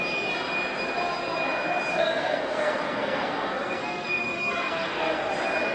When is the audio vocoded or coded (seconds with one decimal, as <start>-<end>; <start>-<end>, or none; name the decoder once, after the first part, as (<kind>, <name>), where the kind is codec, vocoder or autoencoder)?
1.9-5.3 (codec, SNAC)